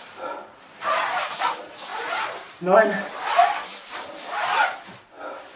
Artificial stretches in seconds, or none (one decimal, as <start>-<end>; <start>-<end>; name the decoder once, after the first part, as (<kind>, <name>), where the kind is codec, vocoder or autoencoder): 0.0-5.6 (vocoder, BigVGAN v2)